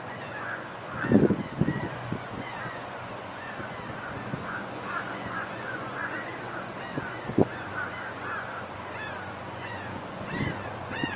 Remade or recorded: remade